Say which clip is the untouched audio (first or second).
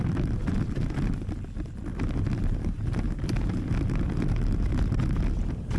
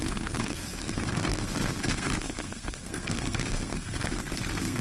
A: first